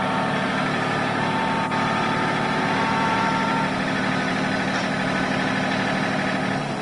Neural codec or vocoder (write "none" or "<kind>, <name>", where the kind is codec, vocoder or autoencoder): none